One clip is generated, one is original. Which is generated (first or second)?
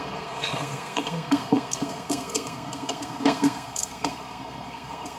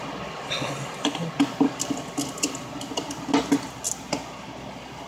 first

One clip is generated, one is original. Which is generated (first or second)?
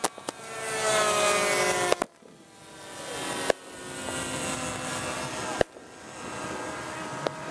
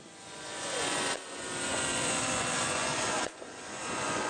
second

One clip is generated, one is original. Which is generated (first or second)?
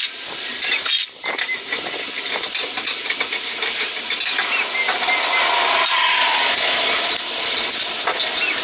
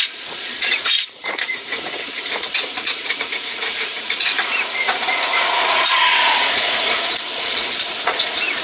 second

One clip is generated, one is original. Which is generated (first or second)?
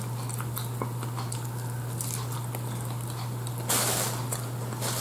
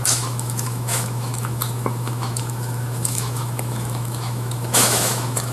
second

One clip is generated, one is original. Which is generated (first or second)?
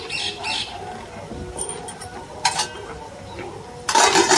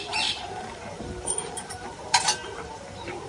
second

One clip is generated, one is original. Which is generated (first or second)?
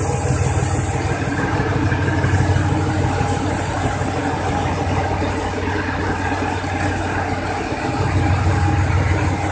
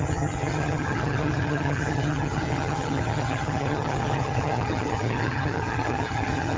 second